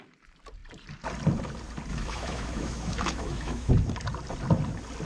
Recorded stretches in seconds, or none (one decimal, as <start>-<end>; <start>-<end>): 0.0-1.9; 3.7-5.1